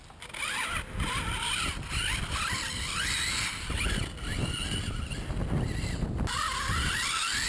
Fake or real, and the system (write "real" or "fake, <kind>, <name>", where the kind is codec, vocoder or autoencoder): real